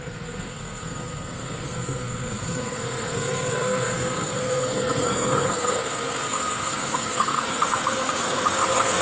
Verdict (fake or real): fake